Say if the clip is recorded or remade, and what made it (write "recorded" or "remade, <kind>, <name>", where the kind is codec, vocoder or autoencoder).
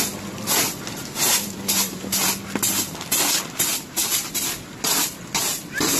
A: recorded